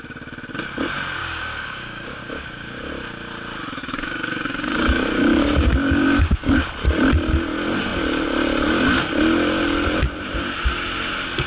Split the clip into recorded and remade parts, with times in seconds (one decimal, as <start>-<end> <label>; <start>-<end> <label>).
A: 0.0-1.2 recorded; 1.2-2.9 remade; 2.9-3.8 recorded; 3.8-6.7 remade; 6.7-11.5 recorded